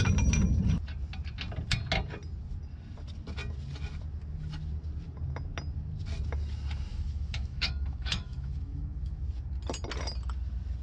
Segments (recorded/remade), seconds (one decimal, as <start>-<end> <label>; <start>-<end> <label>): 0.0-6.9 recorded; 6.9-9.2 remade; 9.2-10.8 recorded